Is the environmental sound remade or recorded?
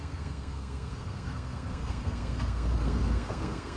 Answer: remade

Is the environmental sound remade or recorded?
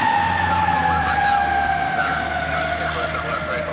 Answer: recorded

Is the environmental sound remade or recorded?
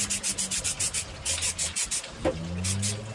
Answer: recorded